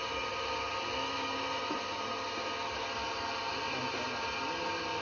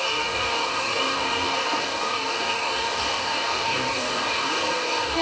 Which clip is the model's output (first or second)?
second